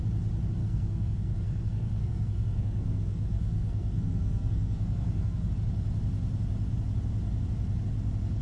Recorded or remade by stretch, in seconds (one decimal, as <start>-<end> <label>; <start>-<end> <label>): 0.0-0.6 recorded; 0.6-5.5 remade; 5.5-8.4 recorded